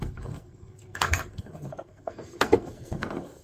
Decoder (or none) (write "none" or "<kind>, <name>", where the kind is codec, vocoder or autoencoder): codec, SNAC